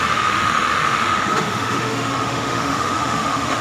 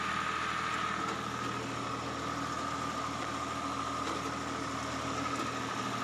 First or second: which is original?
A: second